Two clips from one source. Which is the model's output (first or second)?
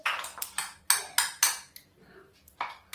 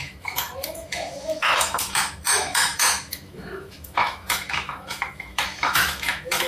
second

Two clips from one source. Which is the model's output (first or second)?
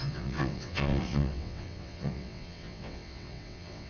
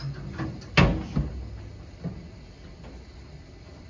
first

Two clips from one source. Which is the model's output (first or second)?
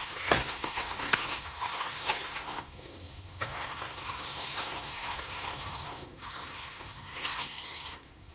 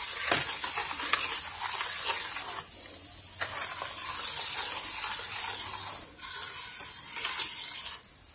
first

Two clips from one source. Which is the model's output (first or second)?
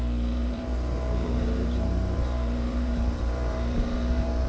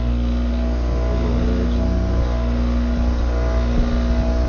first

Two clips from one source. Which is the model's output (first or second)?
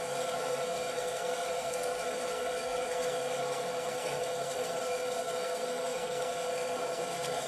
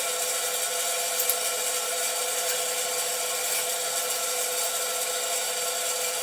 first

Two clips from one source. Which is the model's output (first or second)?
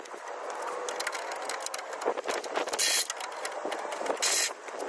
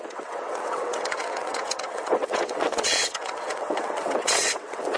second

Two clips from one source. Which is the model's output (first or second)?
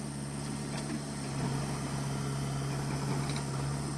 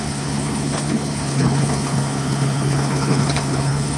second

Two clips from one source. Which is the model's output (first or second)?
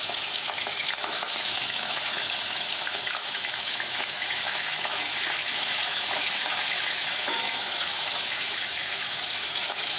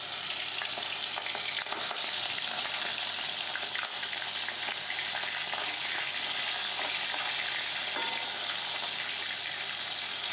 first